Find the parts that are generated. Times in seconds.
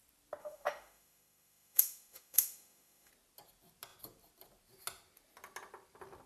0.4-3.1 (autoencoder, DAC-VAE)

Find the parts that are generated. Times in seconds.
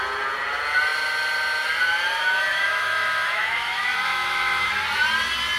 2.2-4.7 (autoencoder, DAC-VAE)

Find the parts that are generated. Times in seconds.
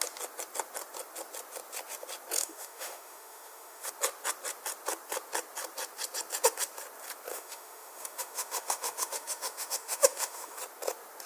2.4-3.9 (autoencoder, DAC-VAE); 7.3-10.6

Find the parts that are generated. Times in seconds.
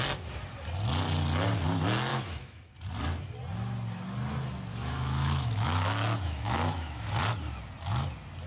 2.1-2.7 (autoencoder, DAC-VAE); 4.7-7.1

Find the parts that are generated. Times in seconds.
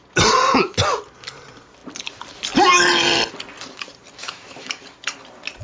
4.2-4.8 (autoencoder, DAC-VAE)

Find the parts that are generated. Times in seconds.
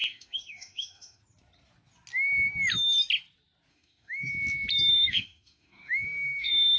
0.0-1.2 (autoencoder, DAC-VAE); 3.7-4.3; 4.9-6.8